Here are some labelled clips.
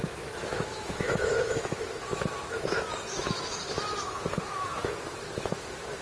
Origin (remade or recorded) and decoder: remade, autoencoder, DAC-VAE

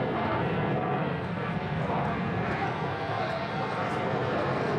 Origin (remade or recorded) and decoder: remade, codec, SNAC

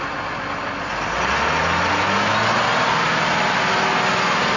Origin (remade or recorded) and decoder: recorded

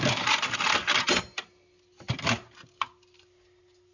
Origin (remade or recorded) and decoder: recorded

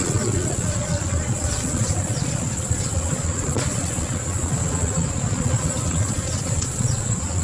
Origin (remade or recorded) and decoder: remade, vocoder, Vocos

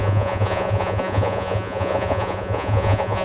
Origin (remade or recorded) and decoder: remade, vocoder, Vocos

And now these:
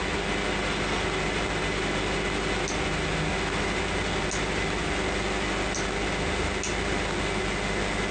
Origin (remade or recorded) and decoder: recorded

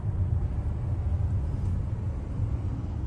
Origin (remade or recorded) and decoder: recorded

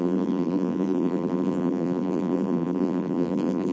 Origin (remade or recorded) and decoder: remade, vocoder, BigVGAN v2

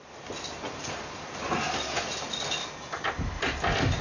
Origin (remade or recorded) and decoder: recorded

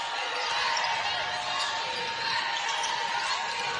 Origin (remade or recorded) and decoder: recorded